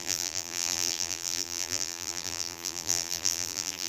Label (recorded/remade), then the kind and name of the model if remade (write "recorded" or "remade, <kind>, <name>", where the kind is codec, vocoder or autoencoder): remade, vocoder, BigVGAN v2